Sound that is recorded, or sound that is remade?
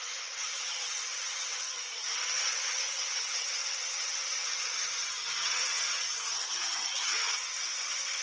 remade